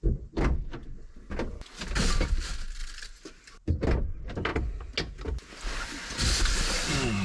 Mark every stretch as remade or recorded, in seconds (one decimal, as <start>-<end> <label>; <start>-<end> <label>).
0.0-7.2 recorded